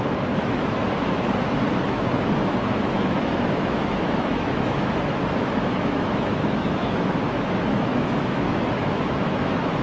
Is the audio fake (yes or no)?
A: yes